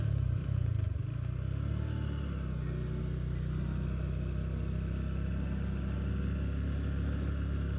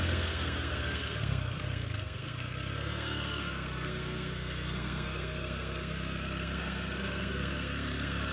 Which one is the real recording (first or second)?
first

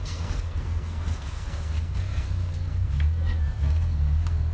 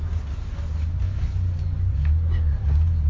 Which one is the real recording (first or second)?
second